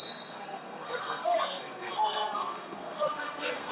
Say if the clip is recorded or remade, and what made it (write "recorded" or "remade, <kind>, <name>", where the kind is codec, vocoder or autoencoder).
remade, codec, SNAC